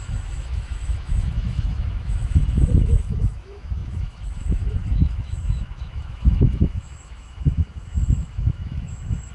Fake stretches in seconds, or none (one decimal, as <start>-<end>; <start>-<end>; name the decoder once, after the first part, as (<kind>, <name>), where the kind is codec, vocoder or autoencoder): 0.0-9.3 (autoencoder, DAC-VAE)